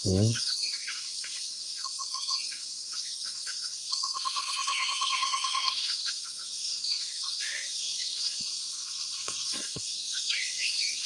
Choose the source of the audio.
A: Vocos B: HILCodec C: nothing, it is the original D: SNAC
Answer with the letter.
D